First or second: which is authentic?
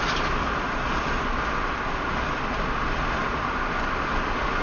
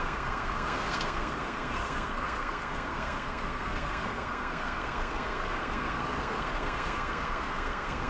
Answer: first